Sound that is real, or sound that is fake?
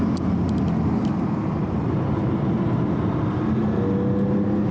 real